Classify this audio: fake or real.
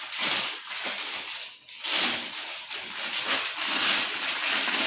real